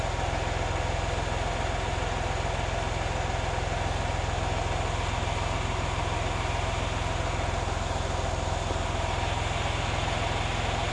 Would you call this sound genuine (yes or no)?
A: yes